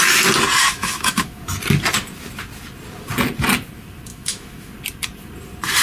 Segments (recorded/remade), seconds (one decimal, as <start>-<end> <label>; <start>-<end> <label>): 0.0-0.7 recorded; 0.7-1.4 remade; 1.4-4.1 recorded; 4.1-4.7 remade; 4.7-5.8 recorded